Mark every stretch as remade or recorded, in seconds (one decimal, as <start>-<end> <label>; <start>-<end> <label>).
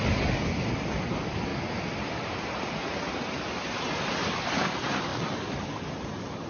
0.0-1.5 remade; 1.5-2.7 recorded; 2.7-5.1 remade; 5.1-5.7 recorded; 5.7-6.5 remade